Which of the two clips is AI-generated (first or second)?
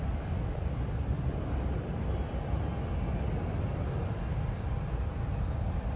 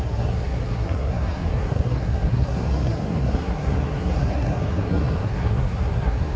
second